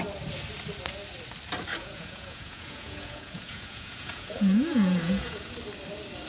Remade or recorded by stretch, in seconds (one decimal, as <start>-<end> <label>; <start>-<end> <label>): 0.0-1.7 recorded; 1.7-5.5 remade; 5.5-6.3 recorded